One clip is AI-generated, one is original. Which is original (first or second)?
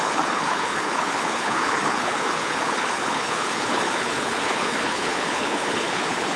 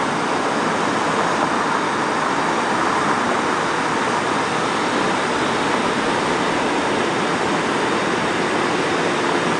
second